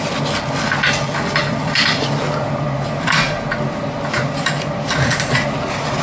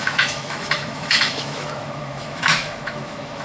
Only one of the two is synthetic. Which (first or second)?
second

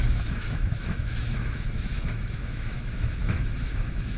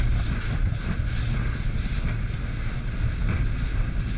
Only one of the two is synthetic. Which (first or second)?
first